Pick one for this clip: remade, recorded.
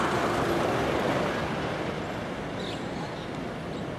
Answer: recorded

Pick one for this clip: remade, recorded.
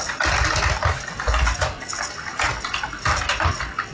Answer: recorded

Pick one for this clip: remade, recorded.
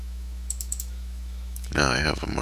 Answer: remade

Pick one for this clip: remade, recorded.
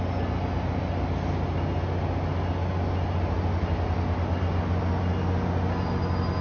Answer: recorded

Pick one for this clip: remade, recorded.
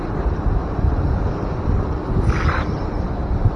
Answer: recorded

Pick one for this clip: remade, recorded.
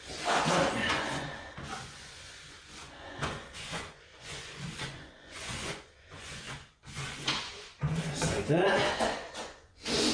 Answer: remade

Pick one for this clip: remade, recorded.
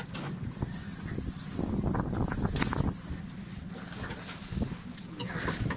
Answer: recorded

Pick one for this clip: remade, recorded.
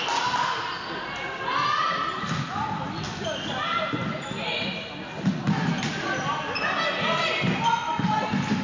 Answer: recorded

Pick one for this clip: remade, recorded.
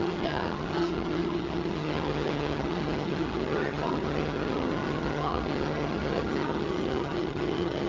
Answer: remade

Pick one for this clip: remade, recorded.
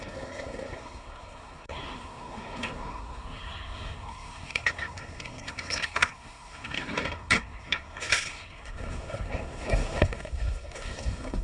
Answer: remade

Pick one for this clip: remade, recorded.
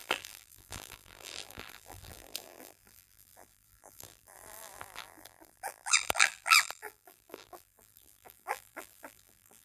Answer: remade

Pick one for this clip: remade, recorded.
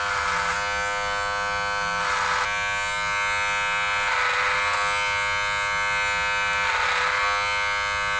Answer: recorded